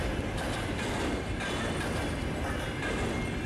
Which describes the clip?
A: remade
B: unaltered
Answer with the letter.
B